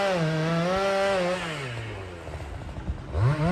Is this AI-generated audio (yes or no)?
no